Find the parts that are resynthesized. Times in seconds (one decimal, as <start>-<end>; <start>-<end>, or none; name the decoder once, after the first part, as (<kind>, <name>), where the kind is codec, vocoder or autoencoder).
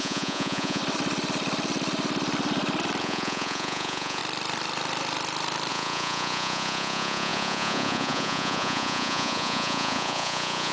0.0-0.8 (vocoder, Vocos); 3.0-4.2; 5.7-10.7